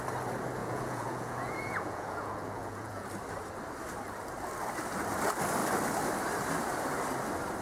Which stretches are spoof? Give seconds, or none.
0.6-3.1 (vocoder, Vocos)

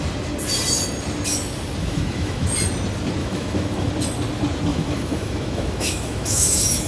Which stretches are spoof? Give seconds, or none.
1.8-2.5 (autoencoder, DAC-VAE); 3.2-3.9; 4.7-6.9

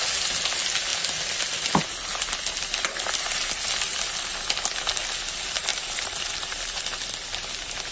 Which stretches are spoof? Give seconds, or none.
5.7-6.8 (vocoder, BigVGAN v2)

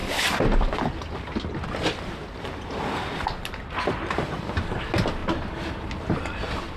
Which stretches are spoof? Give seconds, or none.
none

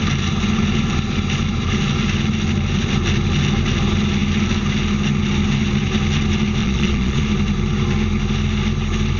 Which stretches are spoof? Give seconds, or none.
6.6-7.2 (vocoder, Vocos)

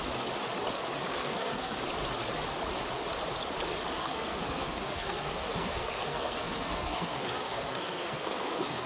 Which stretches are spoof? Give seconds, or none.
1.1-1.8 (codec, SNAC); 4.0-8.9

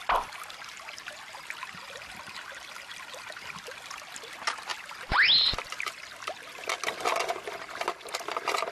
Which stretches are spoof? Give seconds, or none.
none

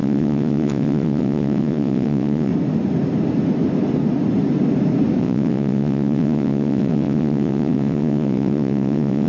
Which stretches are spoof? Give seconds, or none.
0.0-2.5 (vocoder, WaveNeXt); 5.2-9.3